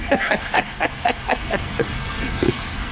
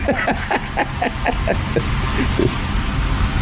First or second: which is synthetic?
first